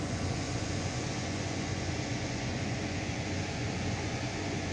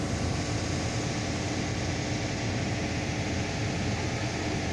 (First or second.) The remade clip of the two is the first